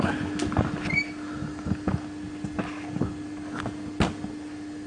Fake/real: real